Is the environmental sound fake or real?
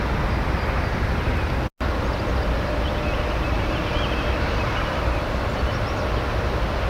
real